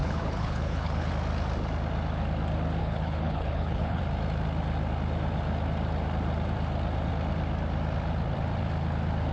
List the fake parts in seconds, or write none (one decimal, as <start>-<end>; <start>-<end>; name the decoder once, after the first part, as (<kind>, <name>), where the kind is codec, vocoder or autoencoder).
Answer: 0.0-1.1 (codec, HILCodec); 2.8-4.0

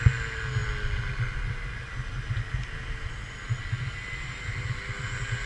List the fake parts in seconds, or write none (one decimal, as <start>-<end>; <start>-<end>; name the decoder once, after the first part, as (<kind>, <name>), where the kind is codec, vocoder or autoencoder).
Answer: none